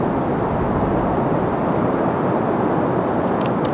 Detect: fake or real real